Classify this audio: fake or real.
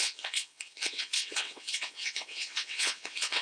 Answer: fake